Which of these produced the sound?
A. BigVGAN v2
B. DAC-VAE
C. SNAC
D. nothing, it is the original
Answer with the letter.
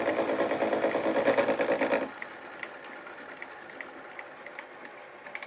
D